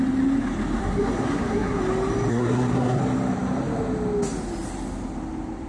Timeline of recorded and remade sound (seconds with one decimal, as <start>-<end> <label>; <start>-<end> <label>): 0.0-0.8 recorded; 0.8-1.8 remade; 1.8-2.3 recorded; 2.3-3.0 remade; 3.0-5.7 recorded